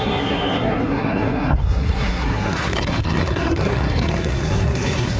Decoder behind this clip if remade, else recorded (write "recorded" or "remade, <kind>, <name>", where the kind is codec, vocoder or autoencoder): remade, codec, SNAC